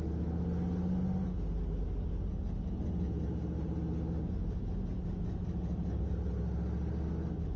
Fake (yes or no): no